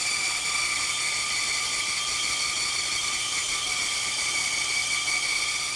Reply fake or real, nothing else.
fake